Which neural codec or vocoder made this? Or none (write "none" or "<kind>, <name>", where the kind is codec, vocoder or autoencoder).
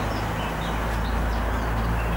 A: none